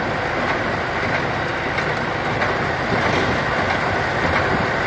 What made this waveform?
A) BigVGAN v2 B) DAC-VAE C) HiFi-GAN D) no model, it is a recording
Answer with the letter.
D